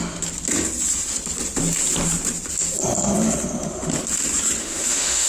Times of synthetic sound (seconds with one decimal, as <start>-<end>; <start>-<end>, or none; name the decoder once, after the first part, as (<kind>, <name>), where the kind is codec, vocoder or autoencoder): 4.6-5.3 (autoencoder, DAC-VAE)